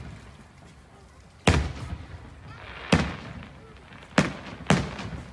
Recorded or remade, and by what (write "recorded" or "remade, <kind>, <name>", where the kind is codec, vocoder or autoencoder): recorded